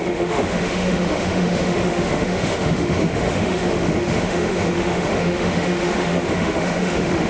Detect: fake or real fake